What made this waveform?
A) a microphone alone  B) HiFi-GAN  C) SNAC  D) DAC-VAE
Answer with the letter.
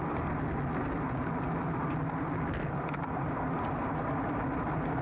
A